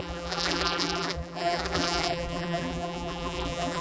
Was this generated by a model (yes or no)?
yes